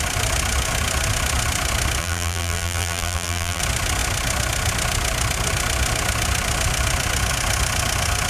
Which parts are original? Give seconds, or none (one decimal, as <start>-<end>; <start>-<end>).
0.0-2.0; 3.6-8.3